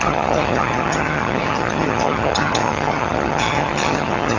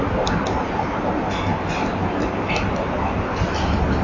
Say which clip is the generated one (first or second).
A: first